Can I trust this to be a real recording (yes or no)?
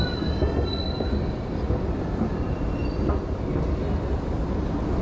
yes